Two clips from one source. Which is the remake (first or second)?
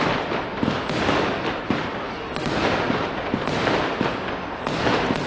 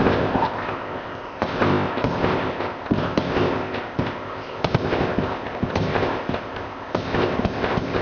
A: second